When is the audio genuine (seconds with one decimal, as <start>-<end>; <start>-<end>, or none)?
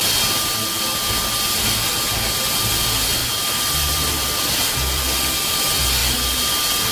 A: 0.0-3.2; 5.6-6.0; 6.5-6.9